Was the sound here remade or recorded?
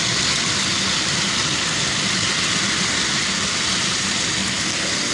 recorded